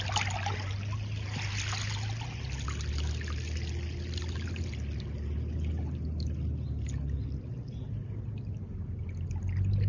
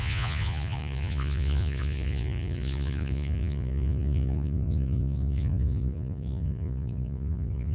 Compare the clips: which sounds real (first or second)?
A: first